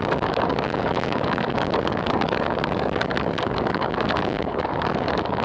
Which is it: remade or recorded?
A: remade